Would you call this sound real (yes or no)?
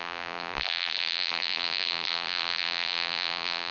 no